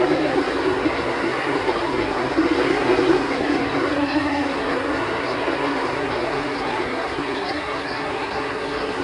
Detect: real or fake fake